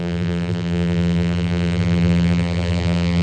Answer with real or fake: fake